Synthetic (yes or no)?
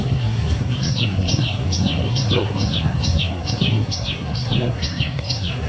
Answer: yes